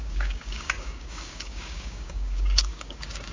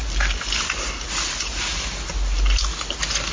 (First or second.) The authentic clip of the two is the second